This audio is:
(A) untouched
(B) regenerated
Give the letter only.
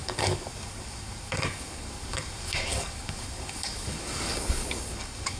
B